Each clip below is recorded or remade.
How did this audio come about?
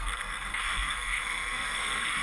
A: remade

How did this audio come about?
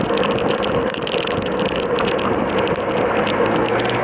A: recorded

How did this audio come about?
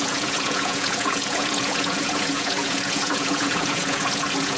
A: remade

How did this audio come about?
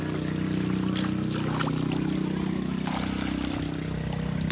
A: recorded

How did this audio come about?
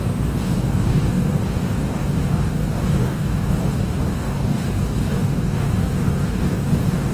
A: remade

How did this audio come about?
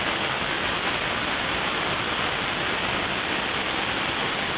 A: recorded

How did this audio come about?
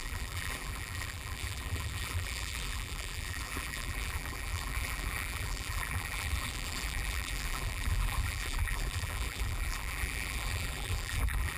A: remade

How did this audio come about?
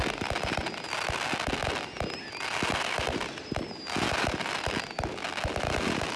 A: recorded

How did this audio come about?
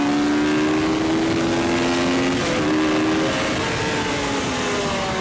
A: recorded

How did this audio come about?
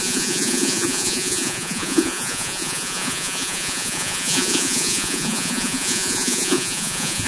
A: remade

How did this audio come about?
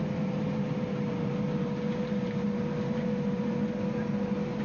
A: recorded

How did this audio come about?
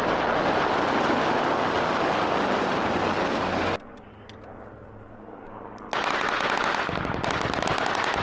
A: recorded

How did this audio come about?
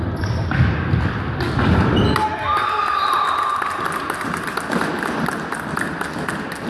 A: recorded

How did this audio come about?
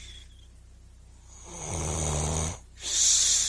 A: recorded